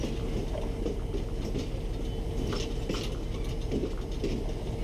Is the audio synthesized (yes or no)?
no